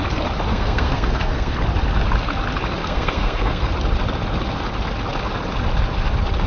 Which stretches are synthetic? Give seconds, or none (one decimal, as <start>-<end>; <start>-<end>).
0.5-1.5; 2.8-3.7